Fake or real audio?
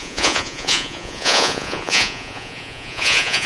fake